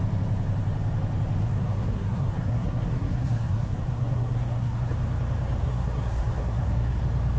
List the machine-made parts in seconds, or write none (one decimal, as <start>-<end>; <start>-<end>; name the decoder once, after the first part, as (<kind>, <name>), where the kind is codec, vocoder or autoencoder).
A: 1.4-4.9 (codec, SNAC); 5.6-7.0